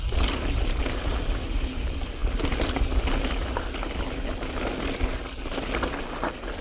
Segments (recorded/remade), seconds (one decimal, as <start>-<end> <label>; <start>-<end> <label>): 0.0-6.6 recorded